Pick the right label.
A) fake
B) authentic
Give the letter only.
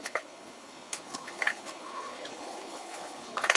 A